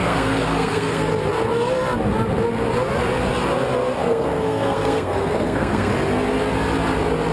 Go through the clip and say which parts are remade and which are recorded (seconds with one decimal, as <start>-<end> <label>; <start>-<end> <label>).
0.0-1.1 remade; 1.1-4.0 recorded; 4.0-5.9 remade; 5.9-7.3 recorded

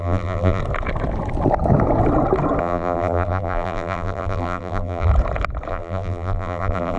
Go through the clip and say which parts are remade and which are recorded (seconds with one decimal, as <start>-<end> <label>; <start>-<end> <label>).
0.0-0.6 remade; 0.6-2.6 recorded; 2.6-5.1 remade; 5.1-5.7 recorded; 5.7-7.0 remade

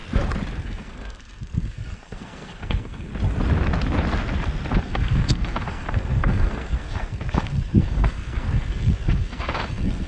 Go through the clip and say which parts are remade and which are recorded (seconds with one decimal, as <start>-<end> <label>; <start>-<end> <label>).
0.0-0.6 recorded; 0.6-3.1 remade; 3.1-4.8 recorded; 4.8-10.1 remade

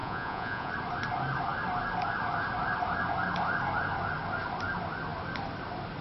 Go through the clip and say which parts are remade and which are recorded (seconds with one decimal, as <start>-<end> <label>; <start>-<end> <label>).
0.0-0.7 remade; 0.7-6.0 recorded

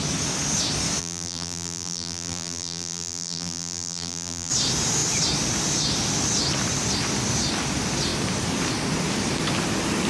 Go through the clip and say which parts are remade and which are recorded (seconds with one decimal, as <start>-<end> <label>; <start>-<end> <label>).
0.0-1.0 recorded; 1.0-4.5 remade; 4.5-10.1 recorded